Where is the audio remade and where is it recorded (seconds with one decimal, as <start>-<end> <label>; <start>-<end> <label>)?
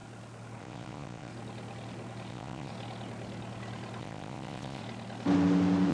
0.0-0.6 recorded; 0.6-1.3 remade; 1.3-2.3 recorded; 2.3-2.7 remade; 2.7-4.0 recorded; 4.0-4.8 remade; 4.8-5.9 recorded